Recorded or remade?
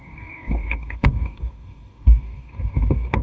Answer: remade